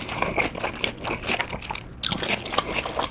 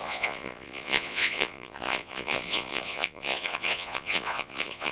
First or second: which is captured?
first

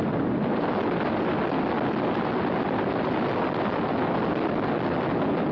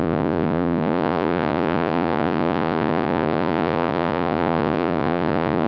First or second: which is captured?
first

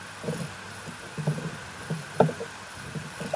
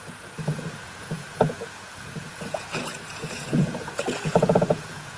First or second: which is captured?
first